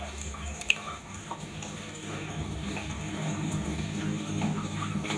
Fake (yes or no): yes